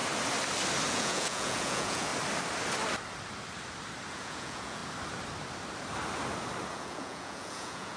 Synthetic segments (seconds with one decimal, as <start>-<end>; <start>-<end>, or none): 0.9-2.1; 4.1-4.8; 6.7-8.0